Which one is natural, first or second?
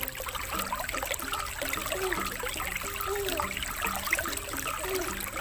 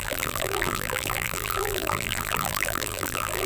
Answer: first